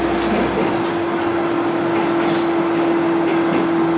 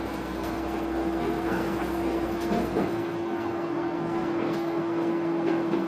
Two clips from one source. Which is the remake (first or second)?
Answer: second